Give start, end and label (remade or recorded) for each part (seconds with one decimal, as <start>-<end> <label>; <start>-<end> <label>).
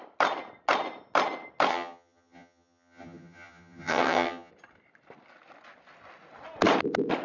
0.0-1.7 recorded; 1.7-4.5 remade; 4.5-7.2 recorded